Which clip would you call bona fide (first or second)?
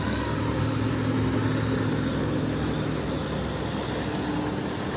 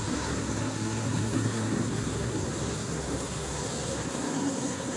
first